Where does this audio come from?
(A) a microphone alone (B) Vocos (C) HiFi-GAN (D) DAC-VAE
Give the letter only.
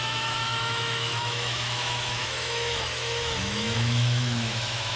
D